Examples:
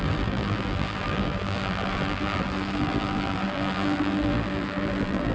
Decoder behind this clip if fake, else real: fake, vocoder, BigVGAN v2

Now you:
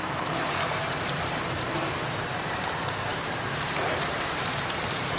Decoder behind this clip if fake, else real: fake, vocoder, BigVGAN v2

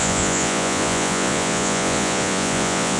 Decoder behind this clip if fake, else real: fake, vocoder, Vocos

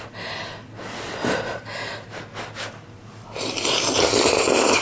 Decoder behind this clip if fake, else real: real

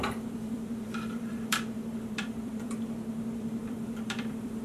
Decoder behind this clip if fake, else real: fake, vocoder, BigVGAN v2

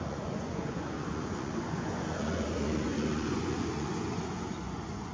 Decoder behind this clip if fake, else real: fake, vocoder, Vocos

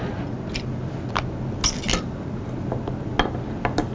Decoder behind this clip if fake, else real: real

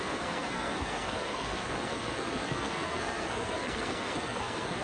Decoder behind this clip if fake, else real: fake, codec, SNAC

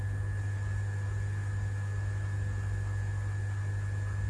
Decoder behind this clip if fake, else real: real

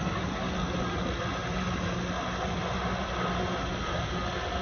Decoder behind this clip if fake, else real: real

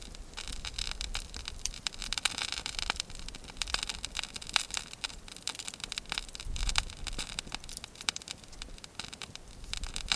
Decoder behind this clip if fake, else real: fake, vocoder, BigVGAN v2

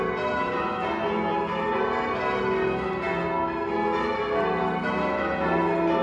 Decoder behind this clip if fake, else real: real